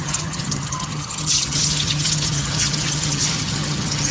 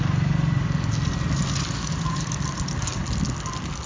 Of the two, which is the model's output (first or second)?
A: first